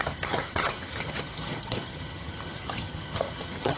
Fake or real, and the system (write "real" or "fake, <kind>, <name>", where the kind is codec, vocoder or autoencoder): fake, vocoder, HiFi-GAN